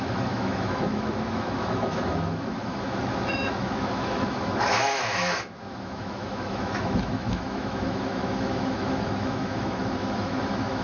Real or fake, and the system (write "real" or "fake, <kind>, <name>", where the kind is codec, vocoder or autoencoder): fake, autoencoder, DAC-VAE